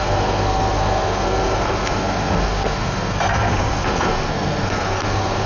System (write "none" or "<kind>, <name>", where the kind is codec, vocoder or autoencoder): codec, SNAC